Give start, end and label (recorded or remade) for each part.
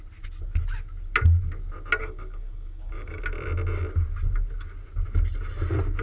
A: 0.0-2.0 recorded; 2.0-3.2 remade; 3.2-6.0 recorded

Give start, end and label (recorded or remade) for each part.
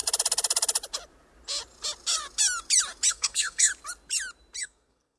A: 0.0-3.1 recorded; 3.1-3.7 remade; 3.7-4.6 recorded; 4.6-5.2 remade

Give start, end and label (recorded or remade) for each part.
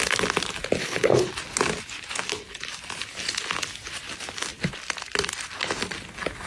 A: 0.0-0.8 recorded; 0.8-1.3 remade; 1.3-6.5 recorded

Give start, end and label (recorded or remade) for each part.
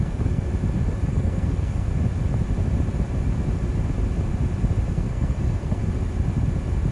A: 0.0-0.5 remade; 0.5-1.1 recorded; 1.1-1.9 remade; 1.9-4.9 recorded; 4.9-5.8 remade; 5.8-6.9 recorded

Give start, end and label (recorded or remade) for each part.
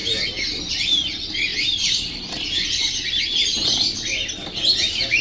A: 0.0-1.5 recorded; 1.5-4.6 remade; 4.6-5.2 recorded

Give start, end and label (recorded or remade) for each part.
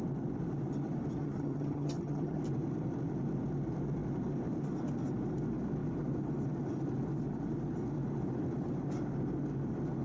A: 0.0-1.2 recorded; 1.2-2.4 remade; 2.4-10.0 recorded